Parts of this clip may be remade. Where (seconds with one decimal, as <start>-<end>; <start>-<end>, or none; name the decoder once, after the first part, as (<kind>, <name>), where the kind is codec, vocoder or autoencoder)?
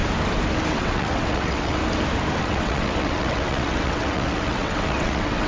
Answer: 0.7-1.8 (vocoder, WaveNeXt); 2.4-5.5